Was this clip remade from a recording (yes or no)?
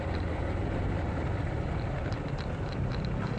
no